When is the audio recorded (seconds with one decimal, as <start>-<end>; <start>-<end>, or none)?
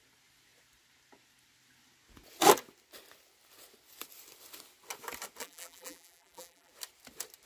0.0-5.4; 6.7-7.5